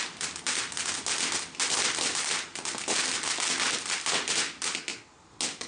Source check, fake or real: real